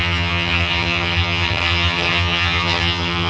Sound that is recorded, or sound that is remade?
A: remade